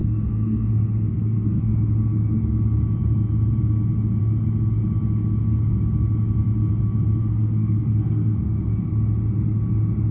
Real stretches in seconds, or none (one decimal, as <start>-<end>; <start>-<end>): 1.6-7.2; 8.7-10.1